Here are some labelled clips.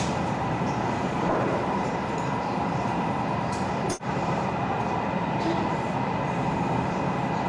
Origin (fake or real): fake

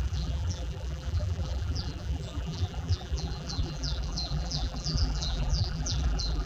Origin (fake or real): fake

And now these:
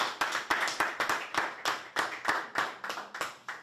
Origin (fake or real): fake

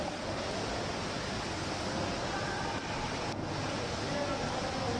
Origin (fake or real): real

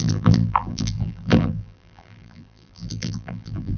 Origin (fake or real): fake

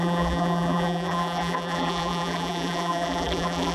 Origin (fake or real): fake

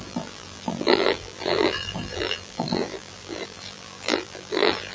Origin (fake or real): fake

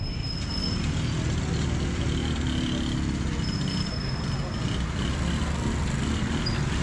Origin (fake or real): real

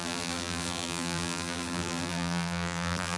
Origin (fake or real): fake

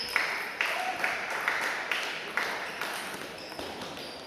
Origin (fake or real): fake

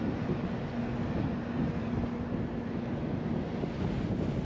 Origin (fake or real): real